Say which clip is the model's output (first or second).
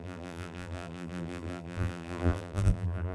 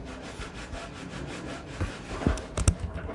first